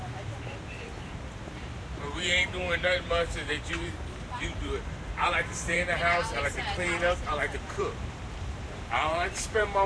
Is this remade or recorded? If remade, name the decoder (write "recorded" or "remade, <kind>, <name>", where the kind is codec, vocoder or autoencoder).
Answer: remade, vocoder, BigVGAN v2